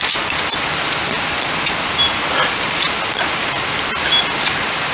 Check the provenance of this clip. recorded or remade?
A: recorded